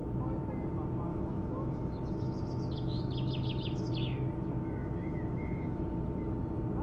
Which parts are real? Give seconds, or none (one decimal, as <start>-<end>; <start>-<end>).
0.0-1.1; 3.9-4.8; 5.8-6.8